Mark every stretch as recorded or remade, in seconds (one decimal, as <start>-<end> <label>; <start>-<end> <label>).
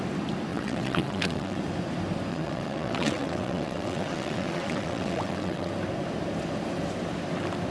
0.0-0.5 recorded; 0.5-1.6 remade; 1.6-2.3 recorded; 2.3-5.7 remade; 5.7-7.7 recorded